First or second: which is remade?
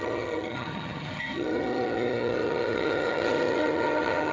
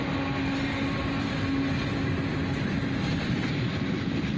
first